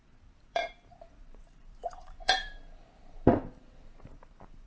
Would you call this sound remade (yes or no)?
yes